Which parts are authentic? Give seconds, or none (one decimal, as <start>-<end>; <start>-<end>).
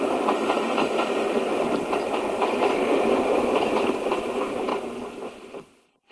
4.7-5.3